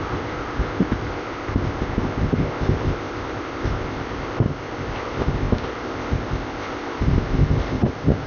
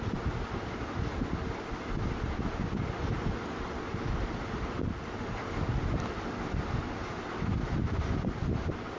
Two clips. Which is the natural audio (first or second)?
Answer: second